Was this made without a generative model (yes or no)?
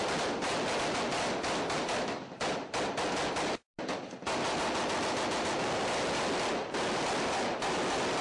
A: yes